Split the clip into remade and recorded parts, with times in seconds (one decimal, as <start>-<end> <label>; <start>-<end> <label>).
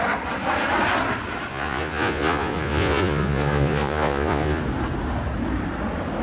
0.0-1.5 recorded; 1.5-4.6 remade; 4.6-6.2 recorded